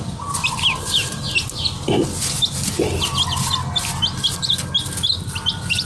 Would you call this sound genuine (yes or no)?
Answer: yes